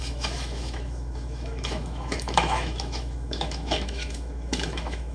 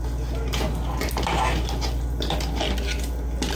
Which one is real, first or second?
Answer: second